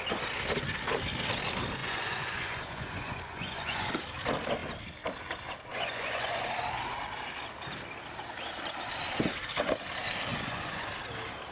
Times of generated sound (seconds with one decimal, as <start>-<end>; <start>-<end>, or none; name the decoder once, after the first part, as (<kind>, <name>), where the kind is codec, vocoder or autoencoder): 1.8-3.9 (vocoder, Vocos); 5.7-6.5; 10.3-10.9